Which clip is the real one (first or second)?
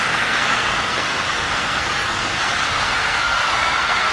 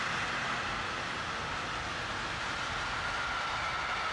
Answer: second